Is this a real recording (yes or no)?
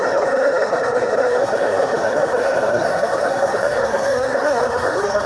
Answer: no